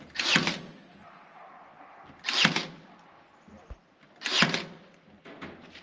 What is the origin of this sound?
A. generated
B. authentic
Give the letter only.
B